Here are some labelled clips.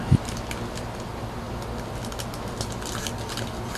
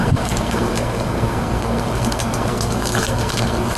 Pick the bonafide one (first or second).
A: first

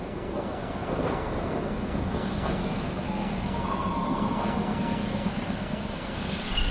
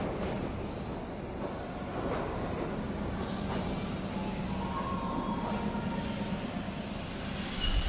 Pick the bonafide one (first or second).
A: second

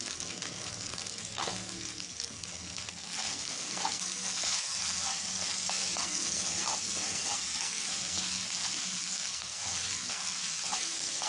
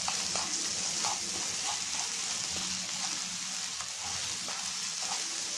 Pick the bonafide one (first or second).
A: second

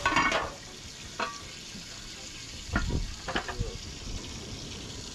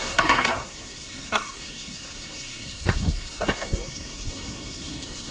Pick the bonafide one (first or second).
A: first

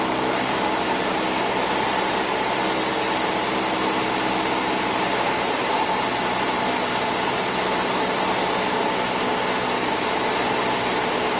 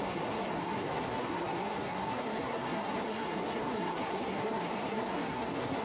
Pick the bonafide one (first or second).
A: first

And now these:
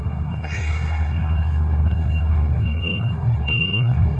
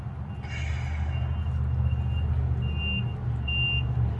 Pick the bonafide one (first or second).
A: second